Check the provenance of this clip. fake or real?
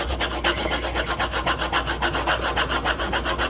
real